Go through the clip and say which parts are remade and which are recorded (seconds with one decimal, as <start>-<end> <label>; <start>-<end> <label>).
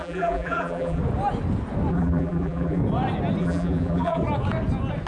0.0-1.0 remade; 1.0-1.9 recorded; 1.9-2.8 remade; 2.8-3.4 recorded; 3.4-4.2 remade; 4.2-5.1 recorded